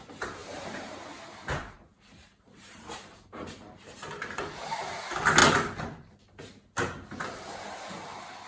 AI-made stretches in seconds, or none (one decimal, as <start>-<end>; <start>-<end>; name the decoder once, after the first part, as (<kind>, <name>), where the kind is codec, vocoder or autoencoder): 0.4-4.4 (vocoder, BigVGAN v2)